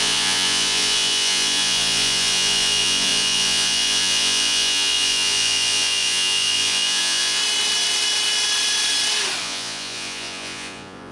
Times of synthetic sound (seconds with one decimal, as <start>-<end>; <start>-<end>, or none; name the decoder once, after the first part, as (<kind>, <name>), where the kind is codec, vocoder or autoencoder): 0.0-7.4 (vocoder, Vocos); 9.4-11.1